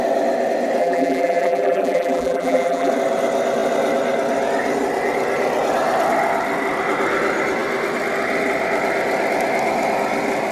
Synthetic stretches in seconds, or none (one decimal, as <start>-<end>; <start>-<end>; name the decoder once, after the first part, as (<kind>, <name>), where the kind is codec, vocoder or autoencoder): 0.8-2.9 (vocoder, BigVGAN v2)